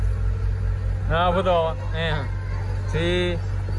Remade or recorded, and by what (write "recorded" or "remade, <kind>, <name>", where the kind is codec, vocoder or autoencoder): recorded